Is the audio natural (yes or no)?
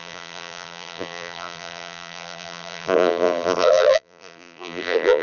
no